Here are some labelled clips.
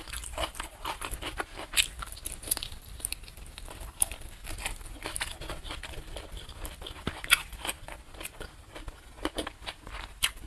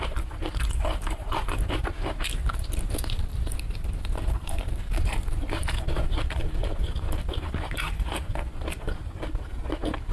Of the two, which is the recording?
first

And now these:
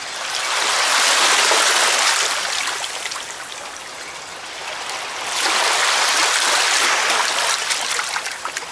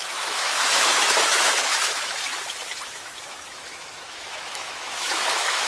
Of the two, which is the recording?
first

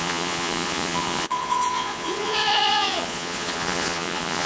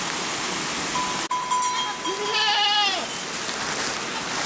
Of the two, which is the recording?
second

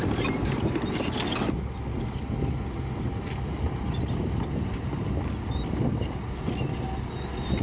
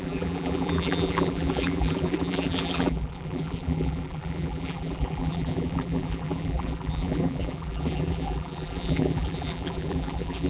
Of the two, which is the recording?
first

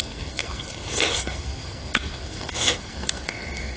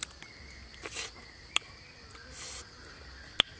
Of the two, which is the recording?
second